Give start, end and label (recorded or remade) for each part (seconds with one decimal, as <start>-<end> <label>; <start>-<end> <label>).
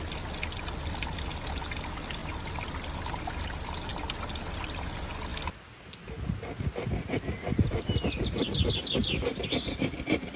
0.0-9.0 recorded; 9.0-10.4 remade